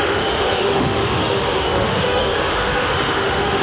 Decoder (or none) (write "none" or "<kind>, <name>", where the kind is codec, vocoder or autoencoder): autoencoder, DAC-VAE